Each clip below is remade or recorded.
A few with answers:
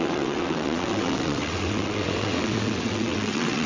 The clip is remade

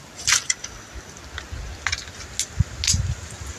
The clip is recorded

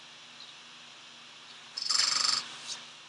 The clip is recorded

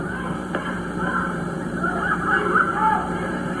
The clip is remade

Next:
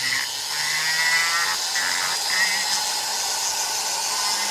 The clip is recorded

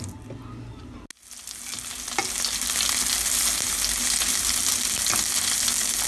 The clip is recorded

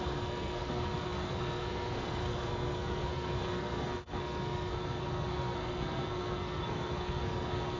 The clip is remade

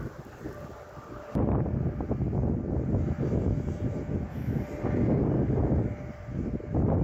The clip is recorded